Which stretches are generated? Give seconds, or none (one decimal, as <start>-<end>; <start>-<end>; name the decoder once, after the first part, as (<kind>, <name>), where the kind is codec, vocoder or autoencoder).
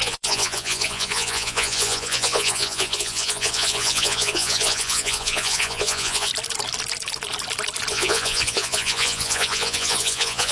0.0-6.3 (vocoder, Vocos); 7.9-10.5